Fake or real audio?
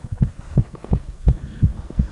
fake